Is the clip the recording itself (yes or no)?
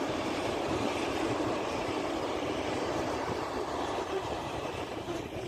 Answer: no